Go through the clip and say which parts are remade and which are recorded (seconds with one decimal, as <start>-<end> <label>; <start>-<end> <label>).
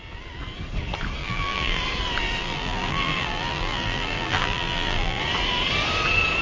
0.0-1.2 recorded; 1.2-1.8 remade; 1.8-2.4 recorded; 2.4-5.2 remade; 5.2-6.4 recorded